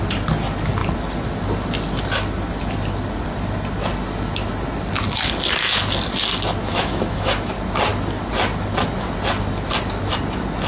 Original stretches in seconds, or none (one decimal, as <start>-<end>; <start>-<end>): 0.0-6.6; 7.5-10.7